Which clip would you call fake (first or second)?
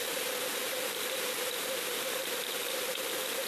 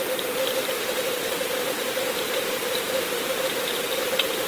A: second